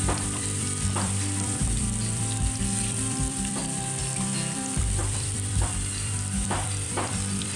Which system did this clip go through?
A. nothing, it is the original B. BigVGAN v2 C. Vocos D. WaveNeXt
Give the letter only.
B